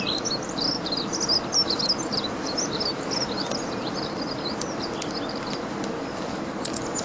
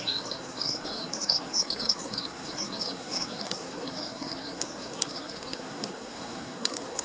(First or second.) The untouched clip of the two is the first